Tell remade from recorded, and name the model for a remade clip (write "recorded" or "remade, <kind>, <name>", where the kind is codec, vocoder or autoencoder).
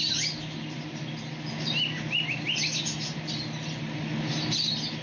recorded